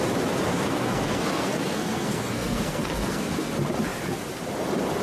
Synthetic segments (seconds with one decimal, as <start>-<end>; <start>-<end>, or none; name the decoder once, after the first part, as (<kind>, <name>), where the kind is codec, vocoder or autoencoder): 0.5-3.5 (codec, SNAC)